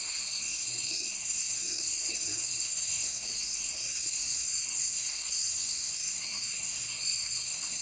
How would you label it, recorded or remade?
remade